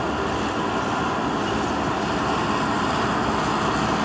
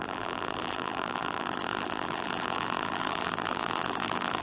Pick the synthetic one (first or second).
second